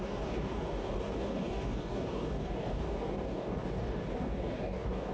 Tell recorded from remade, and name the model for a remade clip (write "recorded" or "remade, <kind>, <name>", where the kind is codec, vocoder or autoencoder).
remade, codec, DAC